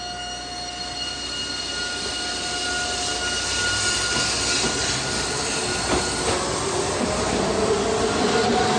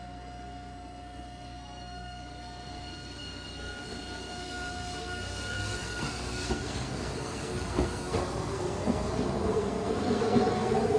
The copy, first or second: second